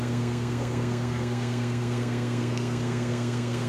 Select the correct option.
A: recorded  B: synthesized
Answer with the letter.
B